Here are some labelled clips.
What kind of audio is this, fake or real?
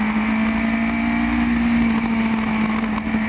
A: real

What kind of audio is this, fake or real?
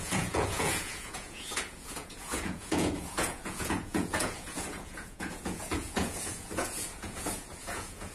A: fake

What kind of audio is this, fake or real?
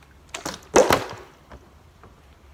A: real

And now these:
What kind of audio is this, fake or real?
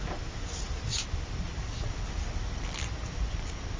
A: real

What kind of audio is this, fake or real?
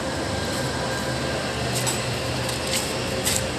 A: real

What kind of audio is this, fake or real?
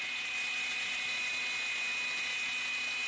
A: real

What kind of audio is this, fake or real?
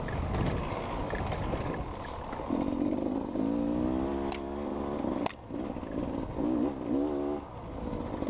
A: real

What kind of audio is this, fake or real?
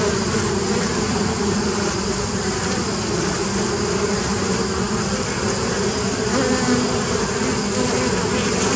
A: fake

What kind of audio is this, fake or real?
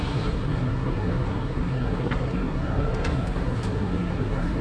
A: fake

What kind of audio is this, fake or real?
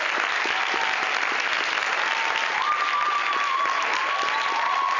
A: real